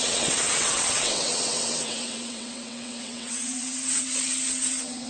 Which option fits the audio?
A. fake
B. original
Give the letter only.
A